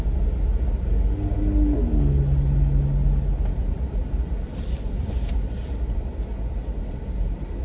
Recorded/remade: recorded